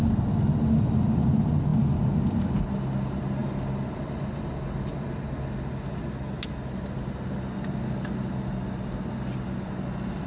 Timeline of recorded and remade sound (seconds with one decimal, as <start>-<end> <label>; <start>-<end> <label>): 0.0-10.3 recorded